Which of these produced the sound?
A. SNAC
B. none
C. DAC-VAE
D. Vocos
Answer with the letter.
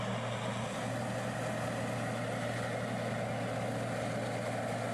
B